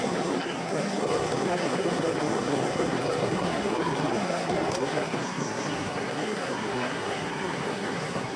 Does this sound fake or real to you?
fake